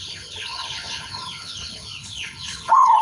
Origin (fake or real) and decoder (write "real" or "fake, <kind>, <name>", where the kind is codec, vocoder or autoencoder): fake, codec, HILCodec